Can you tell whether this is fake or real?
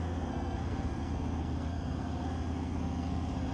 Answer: fake